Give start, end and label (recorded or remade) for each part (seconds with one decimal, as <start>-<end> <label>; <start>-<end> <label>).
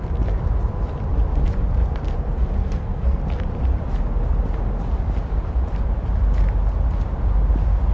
0.0-2.6 recorded; 2.6-3.2 remade; 3.2-7.9 recorded